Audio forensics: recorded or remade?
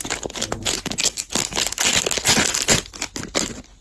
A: recorded